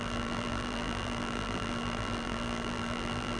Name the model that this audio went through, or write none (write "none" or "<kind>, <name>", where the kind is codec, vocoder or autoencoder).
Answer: vocoder, BigVGAN v2